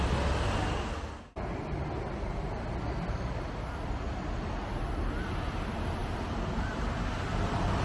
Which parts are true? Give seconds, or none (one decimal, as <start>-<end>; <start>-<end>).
0.0-6.0; 6.9-7.8